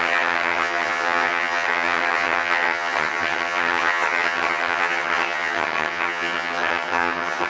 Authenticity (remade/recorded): remade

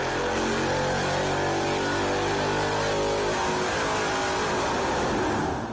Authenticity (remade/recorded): recorded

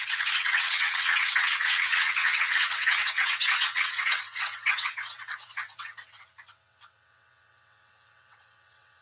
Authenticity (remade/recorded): remade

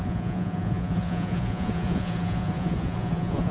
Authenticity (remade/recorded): remade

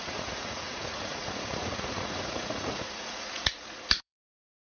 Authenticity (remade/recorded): remade